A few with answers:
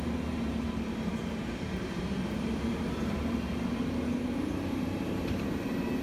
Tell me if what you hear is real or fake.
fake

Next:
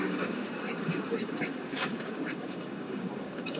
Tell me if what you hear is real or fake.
fake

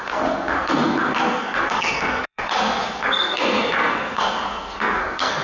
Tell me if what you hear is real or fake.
fake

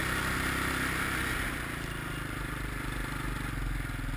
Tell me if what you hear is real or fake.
real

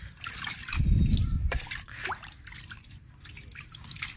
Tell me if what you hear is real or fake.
fake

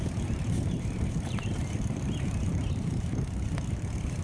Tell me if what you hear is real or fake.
fake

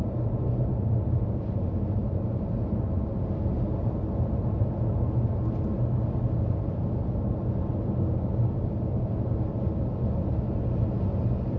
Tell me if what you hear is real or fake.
real